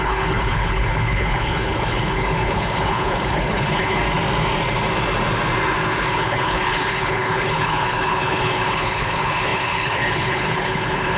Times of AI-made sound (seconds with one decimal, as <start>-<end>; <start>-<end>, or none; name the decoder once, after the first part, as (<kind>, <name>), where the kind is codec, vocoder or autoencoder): 0.0-4.0 (codec, HILCodec); 6.1-11.2